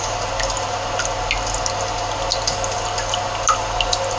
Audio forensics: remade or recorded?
recorded